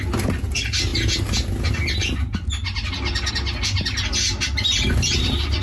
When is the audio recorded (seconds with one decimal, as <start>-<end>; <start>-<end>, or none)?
0.0-5.6